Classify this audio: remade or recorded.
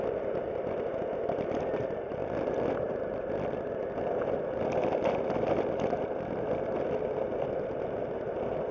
recorded